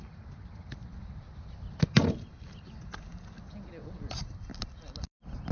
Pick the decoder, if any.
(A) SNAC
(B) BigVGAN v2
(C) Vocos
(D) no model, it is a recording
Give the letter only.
D